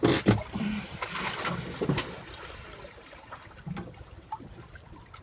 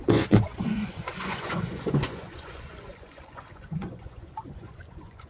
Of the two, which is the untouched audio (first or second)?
first